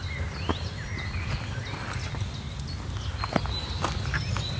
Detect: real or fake real